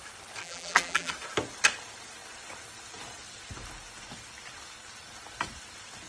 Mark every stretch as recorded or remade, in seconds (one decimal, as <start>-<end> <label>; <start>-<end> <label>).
0.0-0.4 recorded; 0.4-1.1 remade; 1.1-6.1 recorded